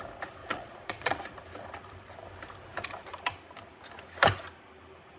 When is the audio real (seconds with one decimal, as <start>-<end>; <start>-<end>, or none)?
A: 0.0-0.4; 1.2-5.2